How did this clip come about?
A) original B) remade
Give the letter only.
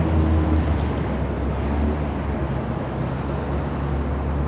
A